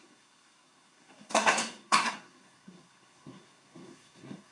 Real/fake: fake